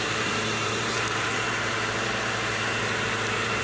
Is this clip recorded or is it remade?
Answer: remade